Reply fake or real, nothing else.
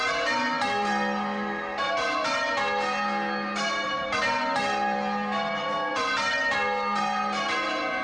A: real